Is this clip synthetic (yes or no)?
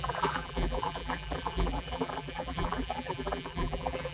yes